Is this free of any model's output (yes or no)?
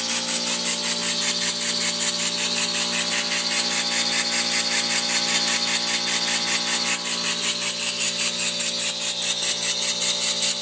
yes